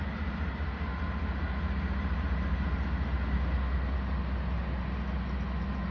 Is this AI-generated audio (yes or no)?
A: no